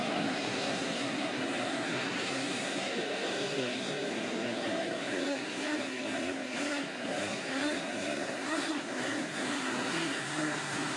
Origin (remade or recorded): remade